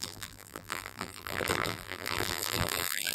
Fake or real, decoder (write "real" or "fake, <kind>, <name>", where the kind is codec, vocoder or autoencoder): fake, vocoder, BigVGAN v2